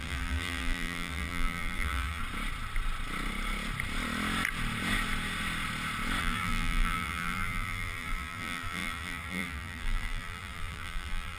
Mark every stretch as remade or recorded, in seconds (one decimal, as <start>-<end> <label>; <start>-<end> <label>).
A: 0.0-2.2 remade; 2.2-6.2 recorded; 6.2-11.4 remade